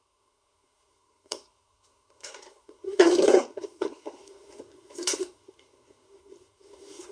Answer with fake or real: fake